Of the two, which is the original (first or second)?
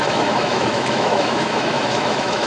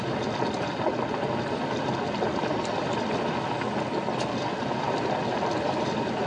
second